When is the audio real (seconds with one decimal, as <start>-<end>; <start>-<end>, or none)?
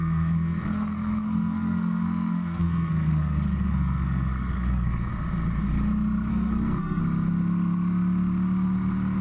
5.1-6.3; 7.0-9.2